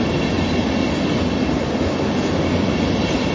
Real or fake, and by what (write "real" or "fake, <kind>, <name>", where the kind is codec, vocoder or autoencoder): real